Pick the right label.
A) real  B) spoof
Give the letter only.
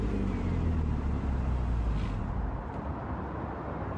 A